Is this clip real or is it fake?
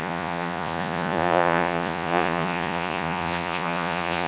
fake